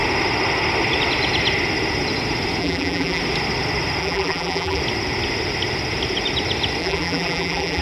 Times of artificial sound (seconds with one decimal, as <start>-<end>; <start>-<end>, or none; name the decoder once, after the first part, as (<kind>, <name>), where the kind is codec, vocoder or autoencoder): 2.6-3.2 (vocoder, BigVGAN v2); 4.0-4.8; 6.8-7.8